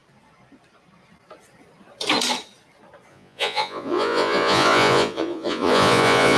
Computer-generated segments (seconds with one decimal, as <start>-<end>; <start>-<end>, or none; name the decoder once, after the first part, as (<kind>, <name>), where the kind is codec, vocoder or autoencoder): 3.1-6.4 (vocoder, Vocos)